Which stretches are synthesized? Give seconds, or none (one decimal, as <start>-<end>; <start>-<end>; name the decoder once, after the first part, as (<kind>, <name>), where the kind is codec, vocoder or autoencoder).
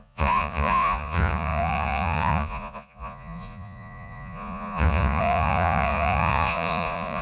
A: 0.0-7.2 (vocoder, Vocos)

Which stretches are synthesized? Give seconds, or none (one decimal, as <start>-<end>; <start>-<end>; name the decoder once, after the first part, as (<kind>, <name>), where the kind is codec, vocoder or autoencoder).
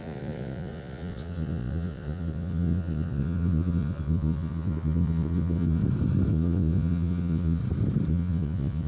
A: 0.0-5.8 (vocoder, Vocos); 6.3-7.6; 8.1-8.9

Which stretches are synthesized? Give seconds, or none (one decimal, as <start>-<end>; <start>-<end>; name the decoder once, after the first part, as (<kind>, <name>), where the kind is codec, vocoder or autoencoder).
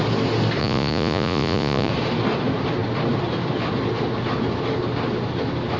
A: 0.6-1.9 (vocoder, Vocos)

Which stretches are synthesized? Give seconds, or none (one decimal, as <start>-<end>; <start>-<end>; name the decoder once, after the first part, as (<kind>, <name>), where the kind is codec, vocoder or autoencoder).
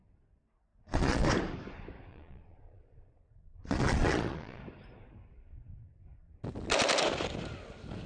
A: 0.7-1.3 (vocoder, Vocos); 2.1-4.6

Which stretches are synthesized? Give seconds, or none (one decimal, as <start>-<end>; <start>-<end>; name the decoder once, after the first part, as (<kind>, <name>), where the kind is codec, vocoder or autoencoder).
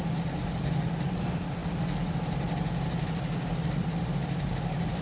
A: none